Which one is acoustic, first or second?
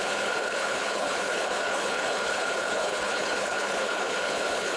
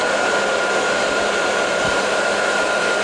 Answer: second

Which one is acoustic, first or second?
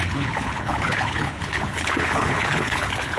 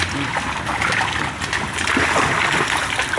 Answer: second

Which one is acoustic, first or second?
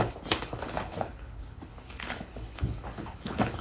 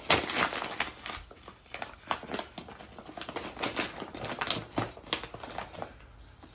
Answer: second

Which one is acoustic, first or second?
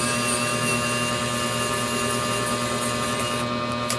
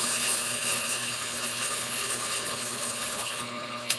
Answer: first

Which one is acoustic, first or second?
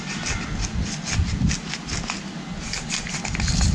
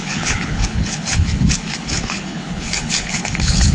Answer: first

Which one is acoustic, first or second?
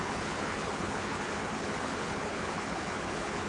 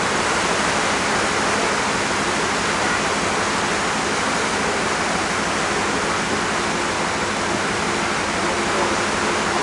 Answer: second